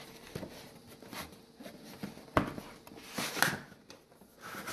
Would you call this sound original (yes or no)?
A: yes